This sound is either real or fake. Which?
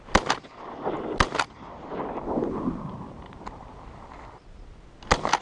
real